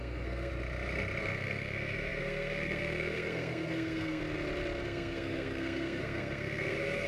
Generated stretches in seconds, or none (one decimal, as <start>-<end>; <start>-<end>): 0.0-0.5; 1.2-4.2; 4.8-7.1